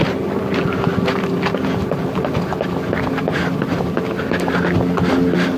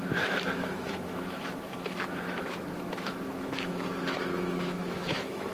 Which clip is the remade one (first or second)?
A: second